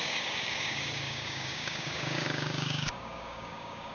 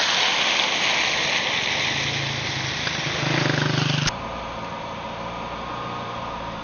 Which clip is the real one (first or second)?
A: second